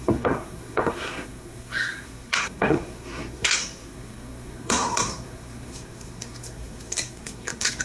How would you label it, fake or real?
fake